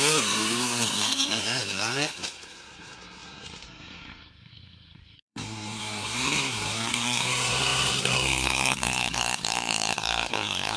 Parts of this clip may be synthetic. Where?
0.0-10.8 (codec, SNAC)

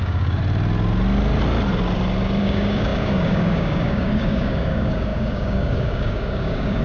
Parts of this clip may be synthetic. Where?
0.0-0.4 (codec, DAC); 2.4-6.8

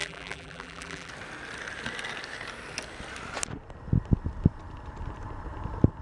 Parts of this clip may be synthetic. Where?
0.0-1.1 (vocoder, BigVGAN v2)